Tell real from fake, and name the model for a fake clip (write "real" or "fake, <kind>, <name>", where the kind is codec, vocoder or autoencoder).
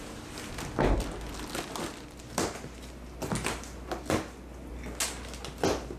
real